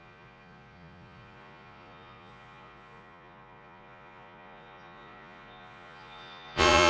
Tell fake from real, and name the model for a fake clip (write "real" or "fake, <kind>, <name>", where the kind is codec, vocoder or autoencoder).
fake, vocoder, Vocos